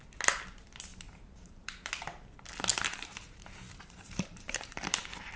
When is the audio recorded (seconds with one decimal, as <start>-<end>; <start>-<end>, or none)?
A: 0.0-0.9; 1.9-2.7; 5.0-5.4